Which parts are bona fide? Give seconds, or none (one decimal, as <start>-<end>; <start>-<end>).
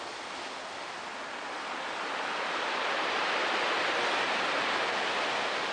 0.0-5.7